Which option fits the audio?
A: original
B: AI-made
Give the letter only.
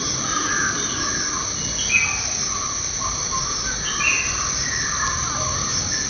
A